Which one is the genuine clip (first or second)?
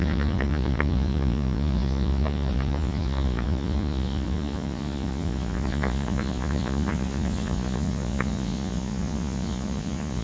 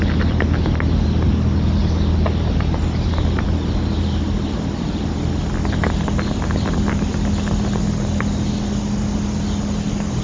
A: second